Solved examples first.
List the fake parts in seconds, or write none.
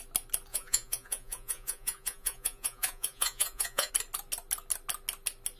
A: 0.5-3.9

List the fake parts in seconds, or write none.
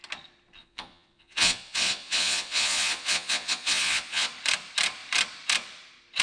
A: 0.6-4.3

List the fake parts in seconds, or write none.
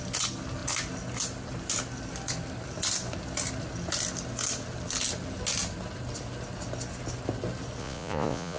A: 7.8-8.6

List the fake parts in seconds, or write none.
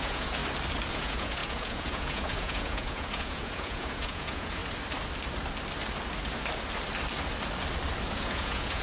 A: 0.0-0.4; 0.9-4.6; 8.1-8.8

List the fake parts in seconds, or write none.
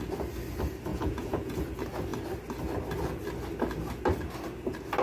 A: 0.9-1.6